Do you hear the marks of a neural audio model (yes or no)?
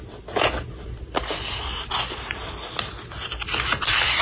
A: no